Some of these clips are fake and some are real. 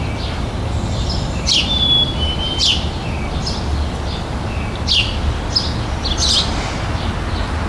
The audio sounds real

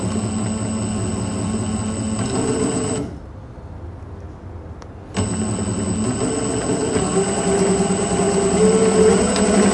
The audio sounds real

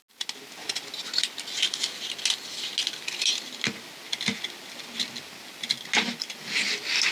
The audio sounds real